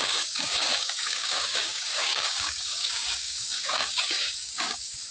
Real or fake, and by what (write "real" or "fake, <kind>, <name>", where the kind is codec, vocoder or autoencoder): fake, codec, DAC